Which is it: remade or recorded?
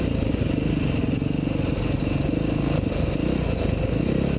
recorded